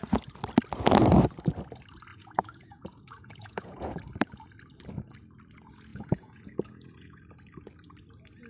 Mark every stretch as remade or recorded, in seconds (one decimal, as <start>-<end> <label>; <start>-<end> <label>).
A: 0.0-2.1 recorded; 2.1-4.0 remade; 4.0-5.9 recorded; 5.9-7.2 remade; 7.2-8.5 recorded